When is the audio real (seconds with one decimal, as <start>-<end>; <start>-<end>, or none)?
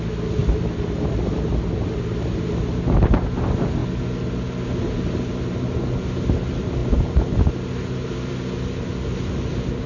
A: 0.0-9.9